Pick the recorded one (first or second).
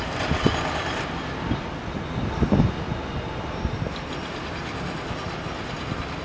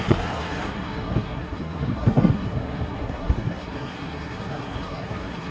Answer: first